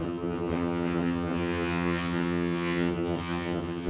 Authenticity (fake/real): fake